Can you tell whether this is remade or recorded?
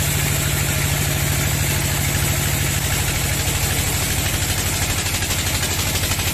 recorded